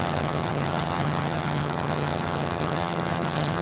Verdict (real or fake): fake